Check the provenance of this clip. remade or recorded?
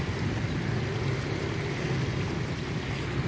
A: recorded